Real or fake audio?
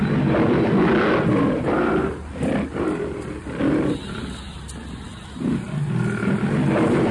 real